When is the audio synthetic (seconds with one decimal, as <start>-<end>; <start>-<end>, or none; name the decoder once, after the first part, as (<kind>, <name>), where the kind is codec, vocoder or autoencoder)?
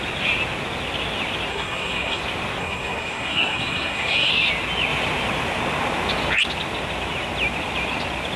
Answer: 1.5-2.2 (codec, SNAC); 2.6-4.3